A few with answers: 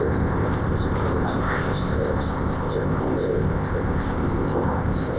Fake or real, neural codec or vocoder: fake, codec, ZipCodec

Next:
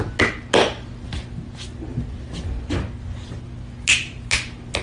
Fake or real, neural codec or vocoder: real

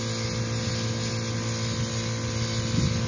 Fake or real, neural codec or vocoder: real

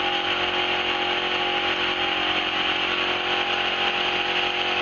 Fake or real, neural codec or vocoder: real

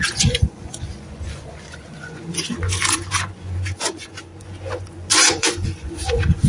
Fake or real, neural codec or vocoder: fake, vocoder, Vocos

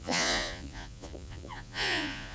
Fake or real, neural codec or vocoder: fake, vocoder, Vocos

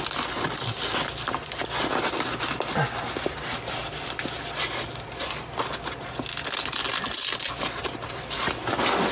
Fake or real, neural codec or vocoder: real